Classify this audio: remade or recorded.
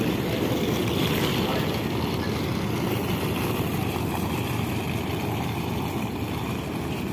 recorded